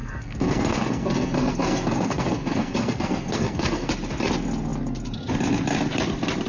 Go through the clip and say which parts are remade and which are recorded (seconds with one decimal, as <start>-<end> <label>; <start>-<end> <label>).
0.0-3.9 remade; 3.9-6.5 recorded